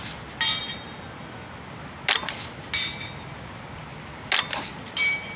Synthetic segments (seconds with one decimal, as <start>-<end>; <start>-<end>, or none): none